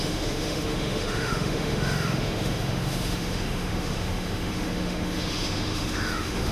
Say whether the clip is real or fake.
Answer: fake